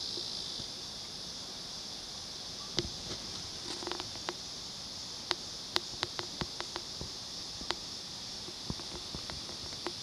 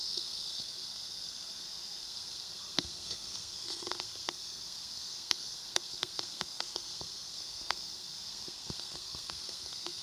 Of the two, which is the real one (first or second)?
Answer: first